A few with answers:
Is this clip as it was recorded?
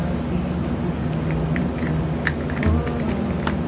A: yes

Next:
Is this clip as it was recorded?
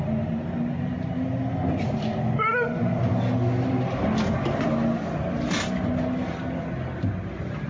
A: yes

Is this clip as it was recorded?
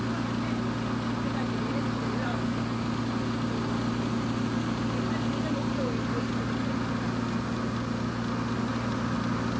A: yes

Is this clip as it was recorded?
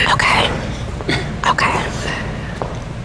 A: yes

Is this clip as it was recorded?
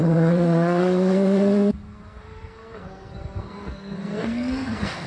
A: no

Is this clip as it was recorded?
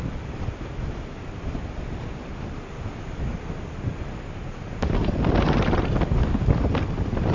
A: yes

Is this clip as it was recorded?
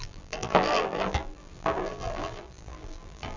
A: no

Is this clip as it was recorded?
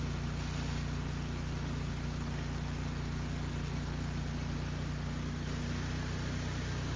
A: yes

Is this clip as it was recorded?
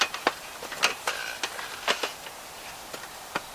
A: yes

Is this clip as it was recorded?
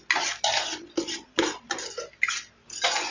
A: yes